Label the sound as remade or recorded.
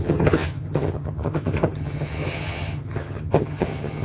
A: remade